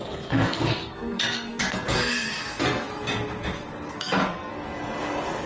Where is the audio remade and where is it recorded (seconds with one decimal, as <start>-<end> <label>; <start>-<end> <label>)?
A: 0.0-2.9 remade; 2.9-3.9 recorded; 3.9-4.5 remade; 4.5-5.5 recorded